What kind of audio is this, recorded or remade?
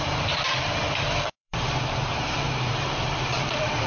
remade